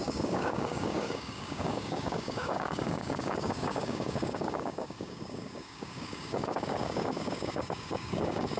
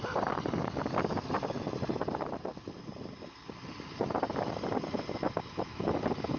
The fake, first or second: first